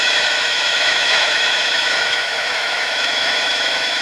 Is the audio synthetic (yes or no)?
yes